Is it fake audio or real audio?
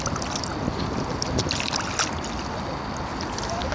real